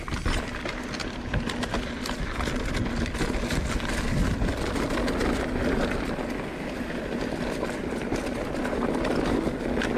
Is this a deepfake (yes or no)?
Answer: no